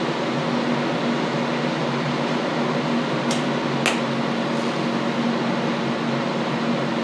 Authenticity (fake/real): real